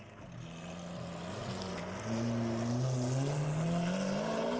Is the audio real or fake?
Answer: real